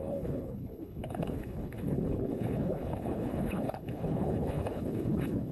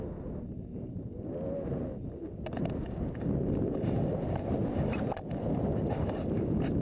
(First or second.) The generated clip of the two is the first